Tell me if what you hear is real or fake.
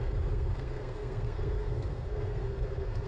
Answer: fake